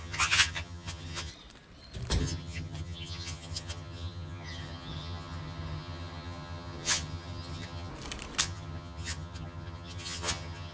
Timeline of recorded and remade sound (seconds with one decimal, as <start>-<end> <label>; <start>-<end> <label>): 0.0-1.3 remade; 1.3-2.2 recorded; 2.2-7.9 remade; 7.9-8.4 recorded; 8.4-10.7 remade